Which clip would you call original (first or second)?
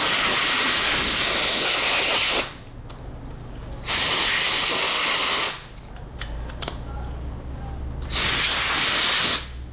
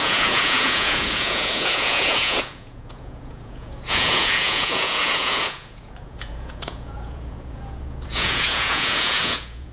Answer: first